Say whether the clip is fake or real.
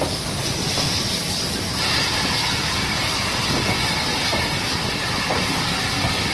real